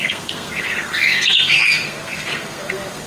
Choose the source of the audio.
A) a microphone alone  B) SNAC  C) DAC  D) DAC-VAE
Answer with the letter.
B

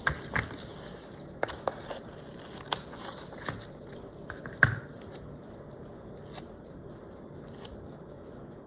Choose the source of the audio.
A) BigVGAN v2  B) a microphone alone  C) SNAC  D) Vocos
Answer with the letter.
B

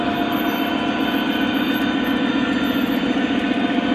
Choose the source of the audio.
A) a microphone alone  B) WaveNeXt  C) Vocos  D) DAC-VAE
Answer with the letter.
A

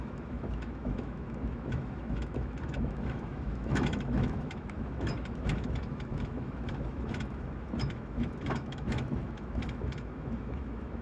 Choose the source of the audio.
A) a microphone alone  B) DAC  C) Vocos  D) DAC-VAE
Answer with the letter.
D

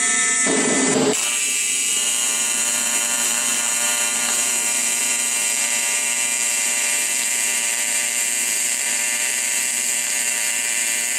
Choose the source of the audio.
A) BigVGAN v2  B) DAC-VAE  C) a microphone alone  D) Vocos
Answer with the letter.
A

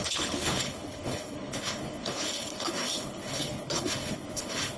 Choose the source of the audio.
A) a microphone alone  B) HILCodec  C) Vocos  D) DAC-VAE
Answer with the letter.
B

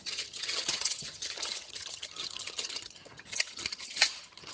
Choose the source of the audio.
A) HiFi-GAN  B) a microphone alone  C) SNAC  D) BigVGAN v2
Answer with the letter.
A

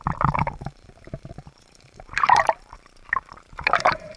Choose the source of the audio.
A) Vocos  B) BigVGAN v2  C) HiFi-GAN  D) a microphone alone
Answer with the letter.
B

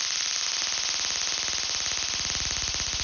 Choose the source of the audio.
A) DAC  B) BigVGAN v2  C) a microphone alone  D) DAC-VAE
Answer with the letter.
C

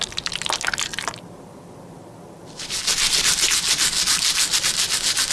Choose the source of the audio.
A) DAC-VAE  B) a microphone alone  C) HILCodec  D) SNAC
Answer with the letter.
B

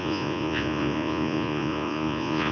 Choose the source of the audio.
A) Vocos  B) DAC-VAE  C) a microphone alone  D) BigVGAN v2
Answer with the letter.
A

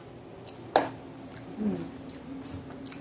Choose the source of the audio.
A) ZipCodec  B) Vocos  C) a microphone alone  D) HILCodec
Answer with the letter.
C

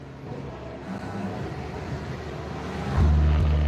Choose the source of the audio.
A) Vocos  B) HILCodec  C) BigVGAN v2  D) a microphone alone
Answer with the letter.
D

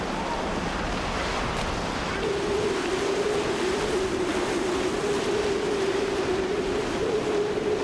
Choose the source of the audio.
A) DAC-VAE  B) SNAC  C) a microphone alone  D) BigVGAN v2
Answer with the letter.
C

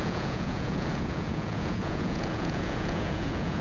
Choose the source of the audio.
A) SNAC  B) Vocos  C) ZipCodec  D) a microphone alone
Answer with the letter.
B